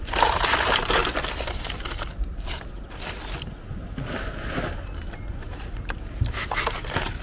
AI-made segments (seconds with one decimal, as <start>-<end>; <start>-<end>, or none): 0.0-1.0; 5.3-7.2